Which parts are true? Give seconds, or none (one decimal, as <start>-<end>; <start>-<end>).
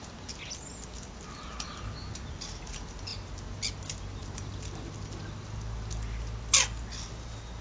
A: 0.0-7.6